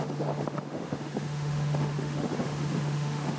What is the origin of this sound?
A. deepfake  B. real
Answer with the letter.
A